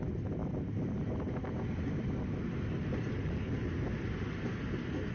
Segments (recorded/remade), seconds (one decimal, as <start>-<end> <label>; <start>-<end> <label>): 0.0-5.1 recorded